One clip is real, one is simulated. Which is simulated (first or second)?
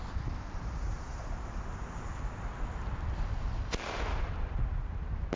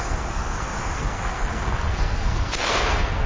second